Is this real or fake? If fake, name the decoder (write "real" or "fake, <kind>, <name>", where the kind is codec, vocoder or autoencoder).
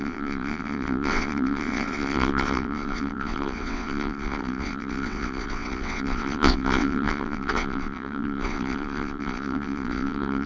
fake, vocoder, WaveNeXt